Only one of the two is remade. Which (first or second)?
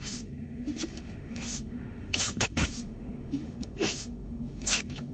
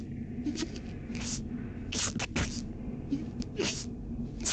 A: first